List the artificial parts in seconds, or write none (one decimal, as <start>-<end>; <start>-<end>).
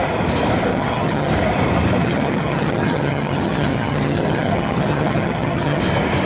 0.7-1.3; 2.0-5.8